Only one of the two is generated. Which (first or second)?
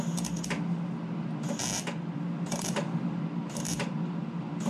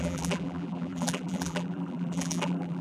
second